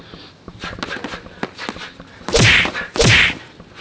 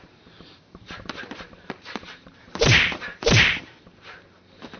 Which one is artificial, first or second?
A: second